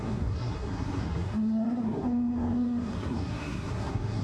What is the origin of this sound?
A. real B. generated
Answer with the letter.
B